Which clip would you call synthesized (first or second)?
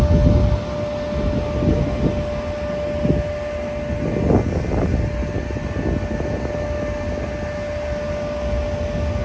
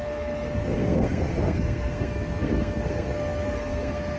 second